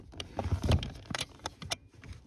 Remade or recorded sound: remade